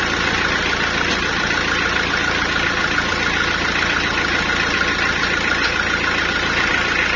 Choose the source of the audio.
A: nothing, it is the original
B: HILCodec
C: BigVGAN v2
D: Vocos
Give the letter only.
A